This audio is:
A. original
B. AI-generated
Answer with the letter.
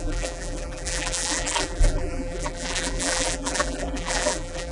B